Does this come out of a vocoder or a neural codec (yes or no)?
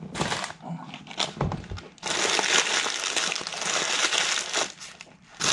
no